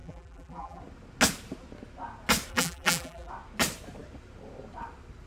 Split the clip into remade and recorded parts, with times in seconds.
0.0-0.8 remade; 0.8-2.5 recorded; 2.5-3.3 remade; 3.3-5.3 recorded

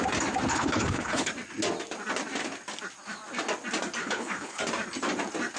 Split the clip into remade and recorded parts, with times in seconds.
0.0-0.5 recorded; 0.5-1.3 remade; 1.3-4.0 recorded; 4.0-4.6 remade; 4.6-5.6 recorded

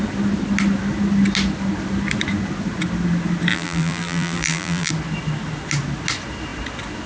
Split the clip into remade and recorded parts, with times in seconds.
0.0-3.5 recorded; 3.5-4.9 remade; 4.9-7.1 recorded

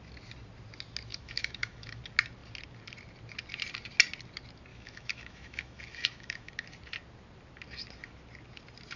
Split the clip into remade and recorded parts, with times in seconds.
0.0-1.1 recorded; 1.1-2.0 remade; 2.0-4.7 recorded; 4.7-6.5 remade; 6.5-9.0 recorded